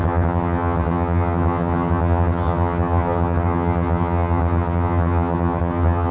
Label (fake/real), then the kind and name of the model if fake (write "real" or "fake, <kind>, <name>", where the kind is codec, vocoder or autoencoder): fake, vocoder, HiFi-GAN